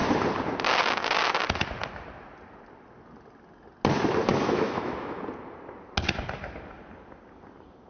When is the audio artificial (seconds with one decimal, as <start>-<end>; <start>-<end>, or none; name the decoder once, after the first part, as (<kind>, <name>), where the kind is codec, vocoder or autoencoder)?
4.3-5.2 (autoencoder, DAC-VAE)